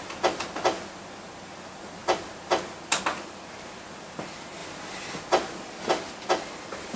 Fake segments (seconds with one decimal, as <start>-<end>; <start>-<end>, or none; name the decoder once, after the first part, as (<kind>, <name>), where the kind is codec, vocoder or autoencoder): none